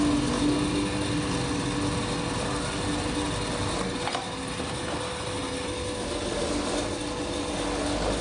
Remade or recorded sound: recorded